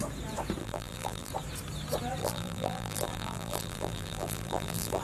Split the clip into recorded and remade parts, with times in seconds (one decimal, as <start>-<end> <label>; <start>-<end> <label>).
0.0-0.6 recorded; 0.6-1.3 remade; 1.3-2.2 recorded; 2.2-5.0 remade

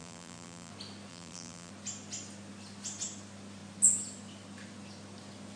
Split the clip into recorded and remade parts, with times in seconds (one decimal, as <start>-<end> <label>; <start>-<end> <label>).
0.0-0.7 remade; 0.7-1.1 recorded; 1.1-1.7 remade; 1.7-5.6 recorded

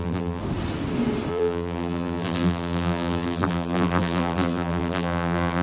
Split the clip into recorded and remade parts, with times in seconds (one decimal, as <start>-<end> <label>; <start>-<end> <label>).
0.0-0.4 remade; 0.4-1.3 recorded; 1.3-5.6 remade

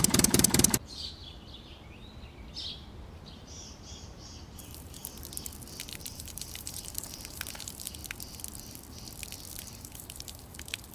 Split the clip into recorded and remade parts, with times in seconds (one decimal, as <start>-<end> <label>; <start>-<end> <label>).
0.0-1.2 remade; 1.2-3.1 recorded; 3.1-5.0 remade; 5.0-5.9 recorded; 5.9-8.0 remade; 8.0-9.6 recorded; 9.6-10.9 remade